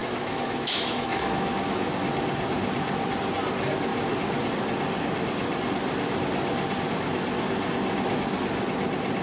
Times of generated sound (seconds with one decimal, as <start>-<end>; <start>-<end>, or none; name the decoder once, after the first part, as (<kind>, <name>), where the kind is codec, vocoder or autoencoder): 0.0-1.9 (autoencoder, DAC-VAE)